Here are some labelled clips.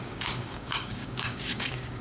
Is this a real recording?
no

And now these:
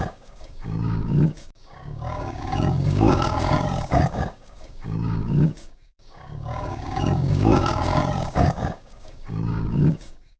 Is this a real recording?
no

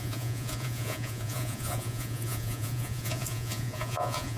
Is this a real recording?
no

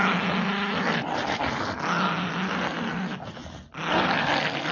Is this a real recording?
yes